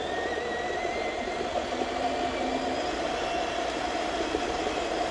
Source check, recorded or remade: recorded